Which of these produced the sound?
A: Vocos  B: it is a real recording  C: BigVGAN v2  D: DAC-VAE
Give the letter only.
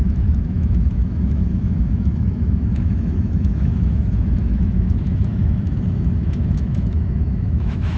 D